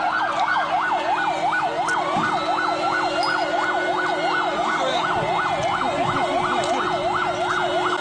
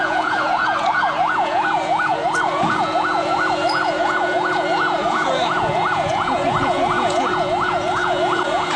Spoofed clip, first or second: second